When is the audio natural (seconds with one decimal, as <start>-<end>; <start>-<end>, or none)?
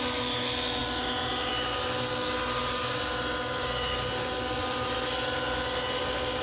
0.0-6.4